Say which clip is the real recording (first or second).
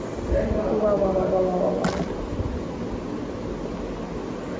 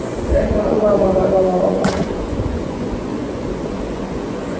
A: first